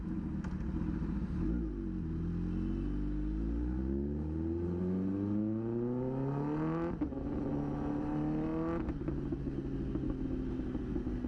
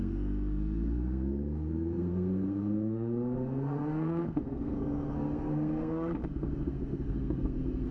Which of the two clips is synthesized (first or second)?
second